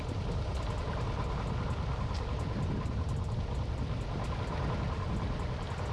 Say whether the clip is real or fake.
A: real